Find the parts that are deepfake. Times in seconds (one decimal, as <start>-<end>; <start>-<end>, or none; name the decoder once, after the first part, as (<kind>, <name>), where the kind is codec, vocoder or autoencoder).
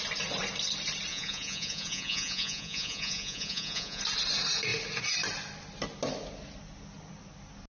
1.1-4.0 (vocoder, Vocos)